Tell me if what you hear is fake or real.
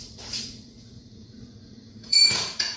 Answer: fake